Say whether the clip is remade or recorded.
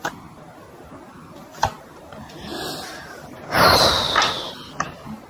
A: recorded